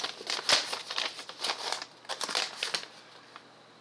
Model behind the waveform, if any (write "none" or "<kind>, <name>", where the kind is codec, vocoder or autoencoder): none